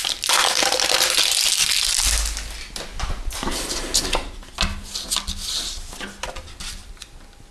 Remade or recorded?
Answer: recorded